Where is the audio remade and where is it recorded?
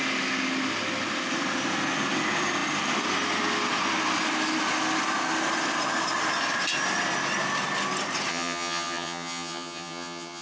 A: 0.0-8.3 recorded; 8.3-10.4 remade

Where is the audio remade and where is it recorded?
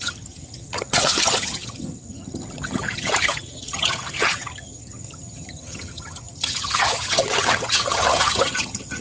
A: 0.0-9.0 remade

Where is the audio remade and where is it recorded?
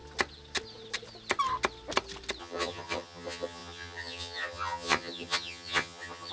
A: 0.0-2.4 recorded; 2.4-6.3 remade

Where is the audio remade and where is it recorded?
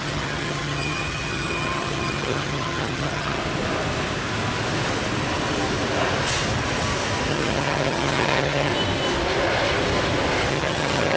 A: 0.0-3.4 remade; 3.4-7.3 recorded; 7.3-8.7 remade; 8.7-10.5 recorded; 10.5-11.2 remade